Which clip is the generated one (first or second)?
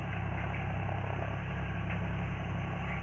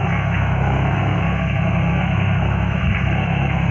second